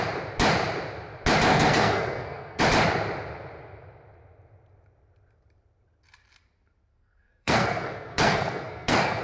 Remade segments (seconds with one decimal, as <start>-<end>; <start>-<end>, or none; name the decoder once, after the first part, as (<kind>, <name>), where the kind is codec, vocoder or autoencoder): 1.5-2.6 (codec, SNAC); 6.9-9.2